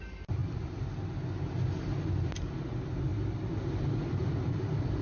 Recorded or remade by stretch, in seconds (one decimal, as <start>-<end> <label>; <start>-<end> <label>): 0.0-0.4 remade; 0.4-2.6 recorded; 2.6-3.1 remade; 3.1-3.9 recorded; 3.9-5.0 remade